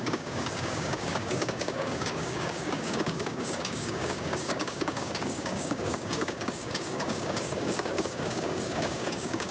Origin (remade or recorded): remade